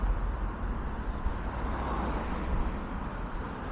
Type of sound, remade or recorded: recorded